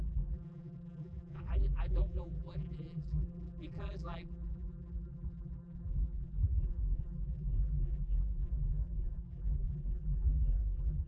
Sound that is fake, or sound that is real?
fake